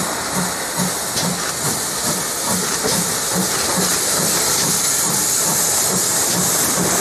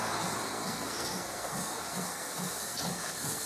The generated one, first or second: second